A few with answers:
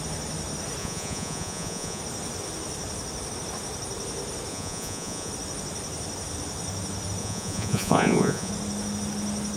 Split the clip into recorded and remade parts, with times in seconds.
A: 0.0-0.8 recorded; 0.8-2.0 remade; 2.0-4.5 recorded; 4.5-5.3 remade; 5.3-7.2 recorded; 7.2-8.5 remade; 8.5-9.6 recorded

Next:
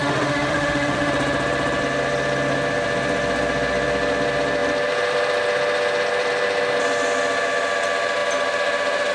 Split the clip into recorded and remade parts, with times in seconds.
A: 0.0-1.1 remade; 1.1-9.1 recorded